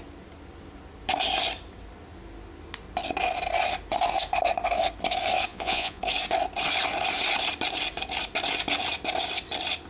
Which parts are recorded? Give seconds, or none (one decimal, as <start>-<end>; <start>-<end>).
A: 0.0-5.5; 6.0-9.9